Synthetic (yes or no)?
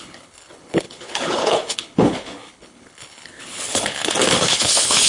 yes